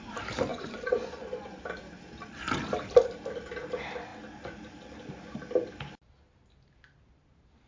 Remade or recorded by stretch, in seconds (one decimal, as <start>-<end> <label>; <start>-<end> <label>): 0.0-0.5 recorded; 0.5-1.6 remade; 1.6-7.7 recorded